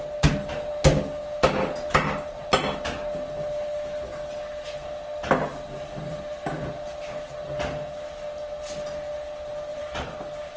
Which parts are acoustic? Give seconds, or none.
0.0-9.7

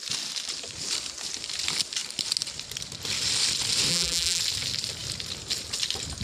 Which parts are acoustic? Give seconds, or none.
0.0-3.9; 4.4-6.2

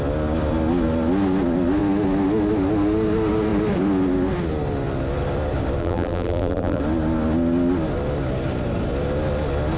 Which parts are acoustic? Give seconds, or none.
0.0-5.8; 6.8-9.8

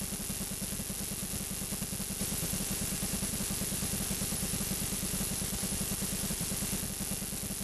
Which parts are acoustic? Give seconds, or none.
0.0-2.2; 6.8-7.6